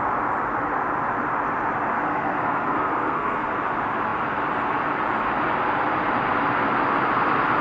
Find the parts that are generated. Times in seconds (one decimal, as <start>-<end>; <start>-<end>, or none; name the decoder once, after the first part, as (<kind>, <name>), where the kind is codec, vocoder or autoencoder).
1.9-3.5 (codec, SNAC)